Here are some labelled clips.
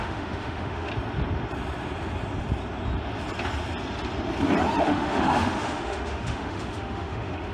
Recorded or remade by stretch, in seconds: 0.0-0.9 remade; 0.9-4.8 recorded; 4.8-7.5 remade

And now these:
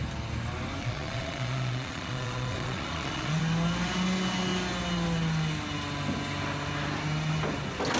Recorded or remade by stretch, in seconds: 0.0-0.8 recorded; 0.8-3.4 remade; 3.4-8.0 recorded

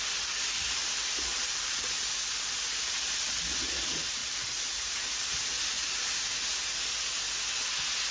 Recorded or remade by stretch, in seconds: 0.0-1.3 recorded; 1.3-2.6 remade; 2.6-4.2 recorded; 4.2-6.1 remade; 6.1-8.1 recorded